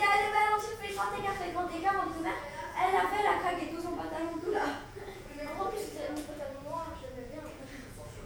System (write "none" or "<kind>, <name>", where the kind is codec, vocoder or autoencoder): vocoder, Vocos